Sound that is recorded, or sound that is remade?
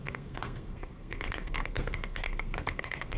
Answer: remade